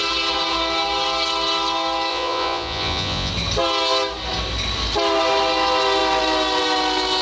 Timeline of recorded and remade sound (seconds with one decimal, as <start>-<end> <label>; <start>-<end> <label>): 0.0-2.1 recorded; 2.1-3.3 remade; 3.3-7.2 recorded